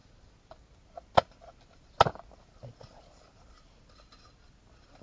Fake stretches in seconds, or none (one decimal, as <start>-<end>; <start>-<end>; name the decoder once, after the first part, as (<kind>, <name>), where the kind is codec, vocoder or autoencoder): none